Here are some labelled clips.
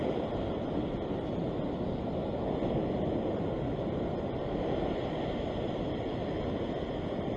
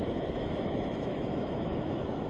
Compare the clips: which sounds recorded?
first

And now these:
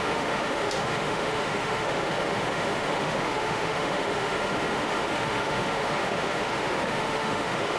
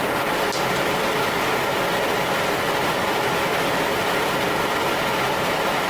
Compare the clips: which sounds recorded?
second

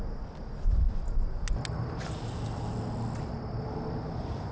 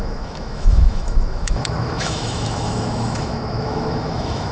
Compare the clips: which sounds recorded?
first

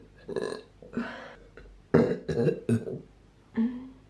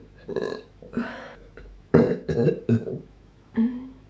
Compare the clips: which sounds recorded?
first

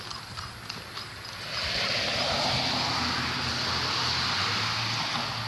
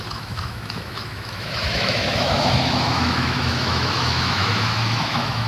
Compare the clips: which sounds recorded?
first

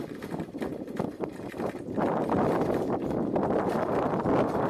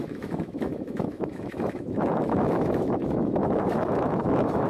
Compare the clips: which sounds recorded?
first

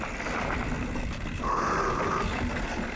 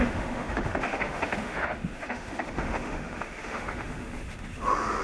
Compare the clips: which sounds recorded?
first